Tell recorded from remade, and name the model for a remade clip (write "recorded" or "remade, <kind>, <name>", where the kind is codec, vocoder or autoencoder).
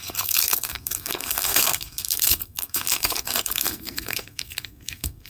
remade, codec, SNAC